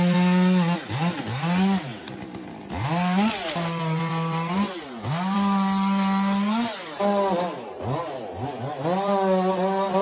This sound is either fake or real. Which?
real